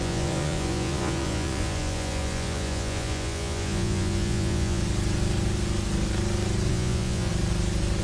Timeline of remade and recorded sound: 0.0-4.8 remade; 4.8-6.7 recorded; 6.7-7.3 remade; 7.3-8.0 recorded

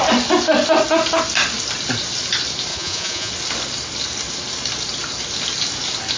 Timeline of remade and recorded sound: 0.0-2.7 recorded; 2.7-3.3 remade; 3.3-6.2 recorded

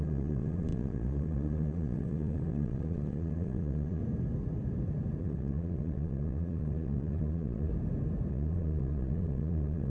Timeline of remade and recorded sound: 0.0-4.0 remade; 4.0-5.2 recorded; 5.2-7.7 remade; 7.7-8.3 recorded; 8.3-9.9 remade

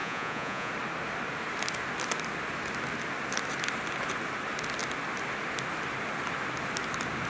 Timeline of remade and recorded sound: 0.0-0.7 remade; 0.7-7.3 recorded

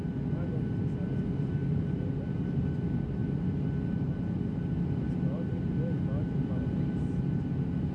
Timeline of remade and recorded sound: 0.0-7.9 recorded